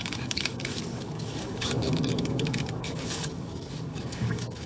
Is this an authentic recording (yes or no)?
no